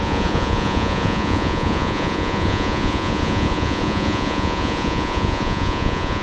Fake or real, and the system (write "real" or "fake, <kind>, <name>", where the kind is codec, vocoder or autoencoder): fake, vocoder, Vocos